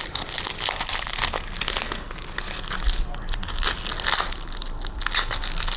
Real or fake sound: real